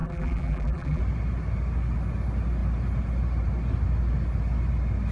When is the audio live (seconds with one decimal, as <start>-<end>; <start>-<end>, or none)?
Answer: 1.0-5.1